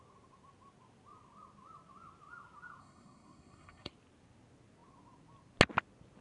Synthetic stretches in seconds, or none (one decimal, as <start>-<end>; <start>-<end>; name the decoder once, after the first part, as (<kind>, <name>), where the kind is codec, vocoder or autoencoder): 2.8-3.9 (codec, SNAC)